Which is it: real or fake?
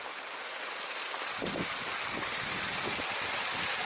real